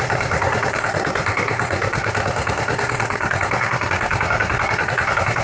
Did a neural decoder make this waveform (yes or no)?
yes